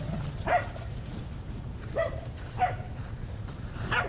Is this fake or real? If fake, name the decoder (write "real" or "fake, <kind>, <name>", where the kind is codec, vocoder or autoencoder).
fake, vocoder, BigVGAN v2